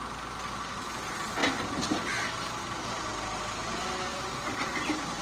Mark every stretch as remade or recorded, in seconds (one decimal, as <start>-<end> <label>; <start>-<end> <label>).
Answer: 0.0-4.1 recorded; 4.1-4.7 remade; 4.7-5.2 recorded